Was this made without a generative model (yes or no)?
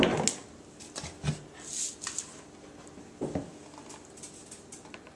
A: yes